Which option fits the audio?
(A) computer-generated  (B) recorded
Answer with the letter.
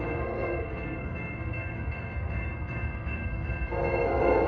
A